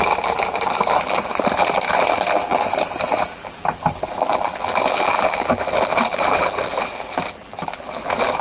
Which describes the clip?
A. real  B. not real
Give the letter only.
B